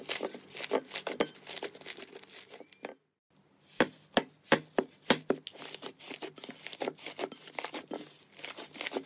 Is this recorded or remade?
recorded